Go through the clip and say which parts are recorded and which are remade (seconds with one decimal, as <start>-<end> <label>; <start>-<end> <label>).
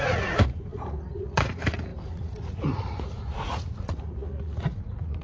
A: 0.0-5.2 remade